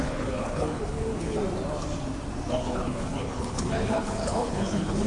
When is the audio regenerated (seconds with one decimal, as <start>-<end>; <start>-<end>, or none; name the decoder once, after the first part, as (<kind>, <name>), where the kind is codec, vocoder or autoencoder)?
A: 0.0-1.4 (codec, HILCodec); 2.5-5.1